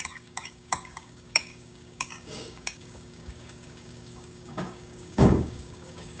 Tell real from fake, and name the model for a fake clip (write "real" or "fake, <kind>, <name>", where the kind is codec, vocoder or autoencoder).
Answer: fake, codec, DAC